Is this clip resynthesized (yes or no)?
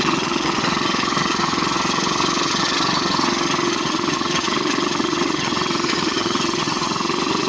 yes